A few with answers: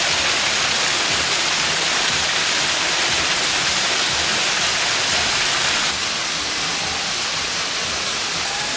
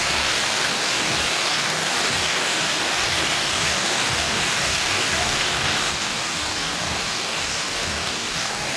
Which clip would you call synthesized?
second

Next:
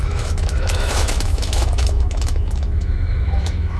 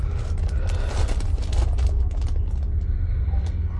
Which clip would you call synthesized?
first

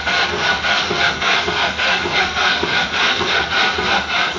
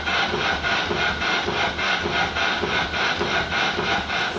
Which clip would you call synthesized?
first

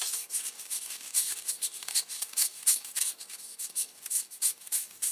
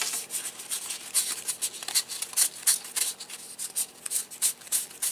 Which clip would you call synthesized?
first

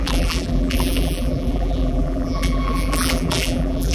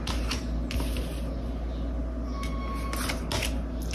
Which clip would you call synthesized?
first